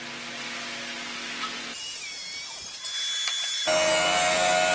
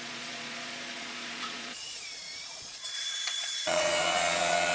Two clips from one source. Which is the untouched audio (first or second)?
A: first